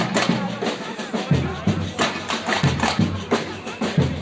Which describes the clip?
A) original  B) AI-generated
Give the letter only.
A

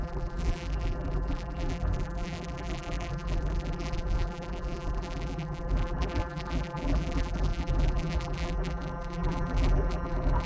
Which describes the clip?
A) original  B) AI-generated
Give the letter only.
B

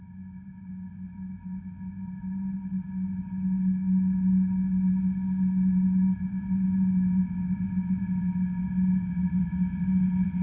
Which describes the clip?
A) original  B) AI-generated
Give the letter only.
A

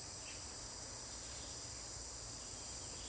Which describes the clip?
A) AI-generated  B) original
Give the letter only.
B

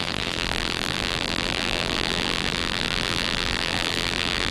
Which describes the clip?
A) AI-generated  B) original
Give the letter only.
A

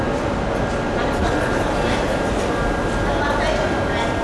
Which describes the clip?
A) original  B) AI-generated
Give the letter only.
A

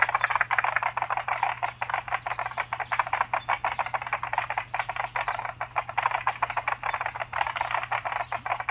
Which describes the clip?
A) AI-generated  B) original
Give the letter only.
B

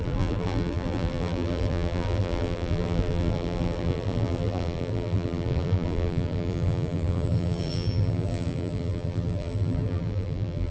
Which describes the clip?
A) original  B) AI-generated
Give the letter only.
B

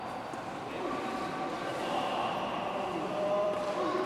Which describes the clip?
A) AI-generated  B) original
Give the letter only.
A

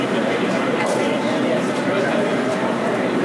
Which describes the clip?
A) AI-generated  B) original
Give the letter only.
A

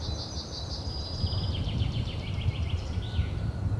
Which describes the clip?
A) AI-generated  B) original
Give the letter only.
A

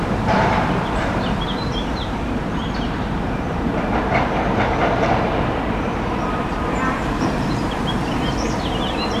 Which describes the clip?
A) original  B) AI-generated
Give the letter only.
B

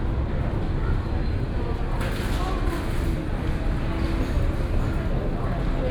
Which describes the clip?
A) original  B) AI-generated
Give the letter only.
A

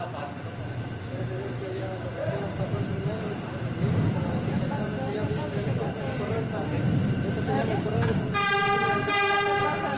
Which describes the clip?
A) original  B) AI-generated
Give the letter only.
B